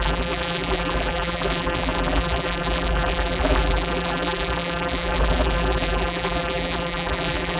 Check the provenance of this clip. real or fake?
fake